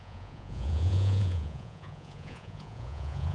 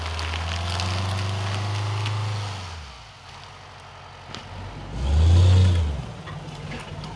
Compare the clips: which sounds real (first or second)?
second